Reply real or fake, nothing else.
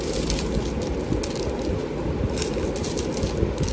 real